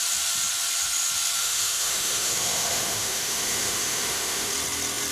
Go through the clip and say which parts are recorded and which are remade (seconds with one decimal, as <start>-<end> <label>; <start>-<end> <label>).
0.0-1.4 recorded; 1.4-4.5 remade; 4.5-5.1 recorded